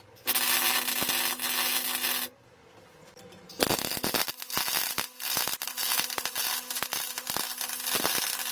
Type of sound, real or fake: real